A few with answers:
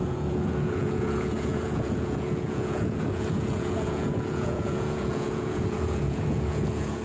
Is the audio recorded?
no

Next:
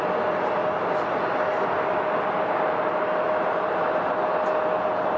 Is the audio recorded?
yes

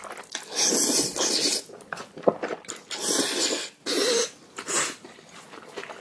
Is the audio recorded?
yes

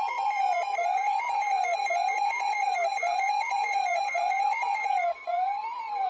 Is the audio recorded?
no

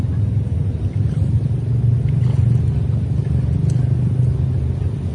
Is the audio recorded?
yes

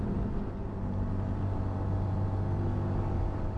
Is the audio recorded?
yes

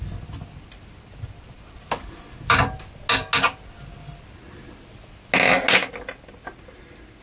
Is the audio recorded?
yes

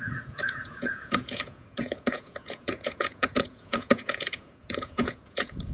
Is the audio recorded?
no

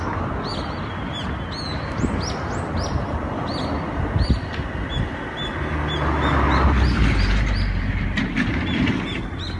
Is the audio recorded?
yes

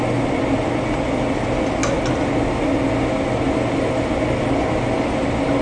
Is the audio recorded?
yes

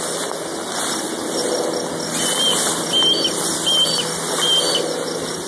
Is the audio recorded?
yes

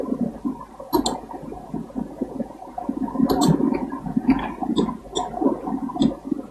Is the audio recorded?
yes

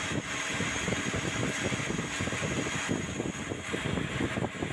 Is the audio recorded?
yes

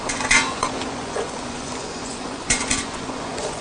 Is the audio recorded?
no